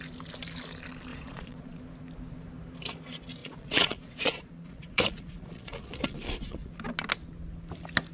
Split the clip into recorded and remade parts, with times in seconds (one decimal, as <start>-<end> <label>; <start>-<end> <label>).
0.0-1.1 recorded; 1.1-1.8 remade; 1.8-3.4 recorded; 3.4-6.7 remade; 6.7-8.1 recorded